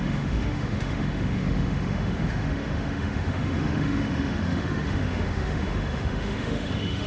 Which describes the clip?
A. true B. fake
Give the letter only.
B